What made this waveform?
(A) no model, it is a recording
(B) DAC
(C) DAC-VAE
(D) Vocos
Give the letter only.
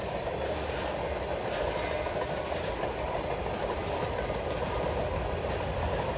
A